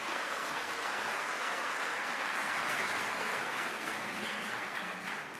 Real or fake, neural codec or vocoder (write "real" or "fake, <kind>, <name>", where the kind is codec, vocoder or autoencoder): fake, codec, SNAC